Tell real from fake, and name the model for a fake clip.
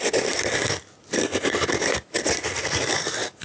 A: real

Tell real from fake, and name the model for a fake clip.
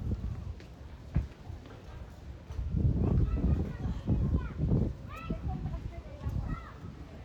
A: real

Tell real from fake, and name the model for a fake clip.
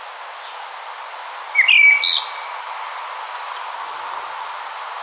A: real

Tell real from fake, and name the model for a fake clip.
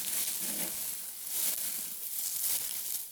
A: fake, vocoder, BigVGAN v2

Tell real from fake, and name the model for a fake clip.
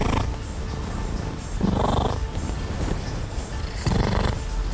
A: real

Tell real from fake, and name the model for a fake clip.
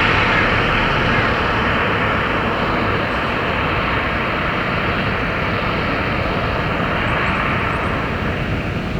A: real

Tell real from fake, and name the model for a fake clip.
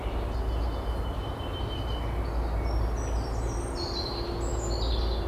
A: real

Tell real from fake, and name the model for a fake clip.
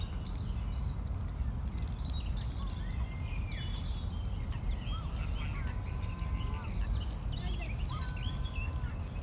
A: real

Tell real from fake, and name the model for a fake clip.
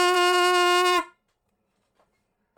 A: fake, vocoder, BigVGAN v2